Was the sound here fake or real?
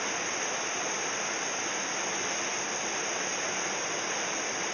real